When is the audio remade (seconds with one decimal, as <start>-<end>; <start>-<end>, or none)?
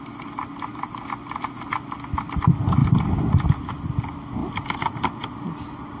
4.4-5.1